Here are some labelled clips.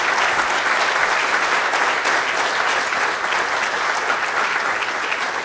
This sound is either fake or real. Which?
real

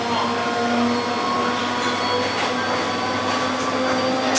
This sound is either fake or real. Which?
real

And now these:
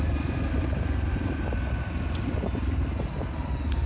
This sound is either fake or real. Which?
real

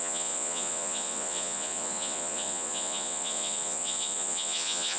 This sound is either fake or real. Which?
fake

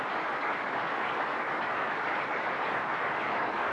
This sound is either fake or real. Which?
fake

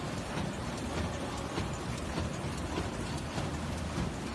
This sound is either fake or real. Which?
real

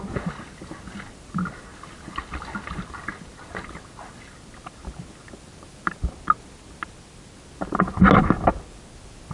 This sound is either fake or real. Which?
real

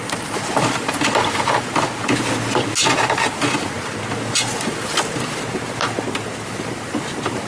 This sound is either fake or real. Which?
real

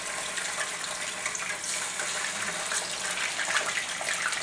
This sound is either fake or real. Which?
real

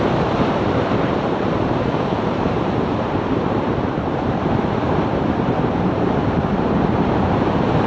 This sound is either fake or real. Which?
fake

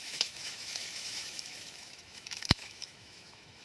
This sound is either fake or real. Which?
fake